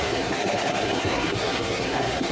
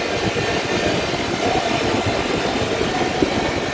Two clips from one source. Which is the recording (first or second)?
second